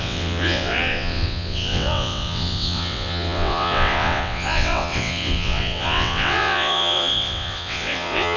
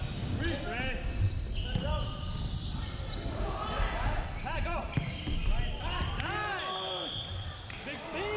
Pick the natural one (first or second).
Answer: second